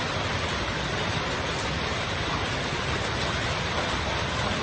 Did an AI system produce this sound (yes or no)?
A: yes